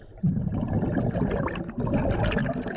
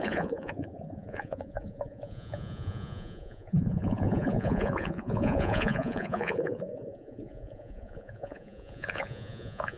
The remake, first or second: second